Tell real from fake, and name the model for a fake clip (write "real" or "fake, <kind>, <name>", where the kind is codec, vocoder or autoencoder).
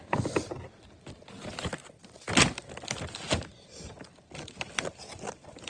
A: real